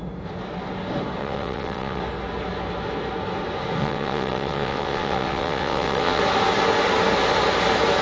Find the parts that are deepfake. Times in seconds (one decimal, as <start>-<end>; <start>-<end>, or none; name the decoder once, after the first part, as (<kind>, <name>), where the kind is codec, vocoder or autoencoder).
1.2-2.0 (vocoder, WaveNeXt); 3.8-6.2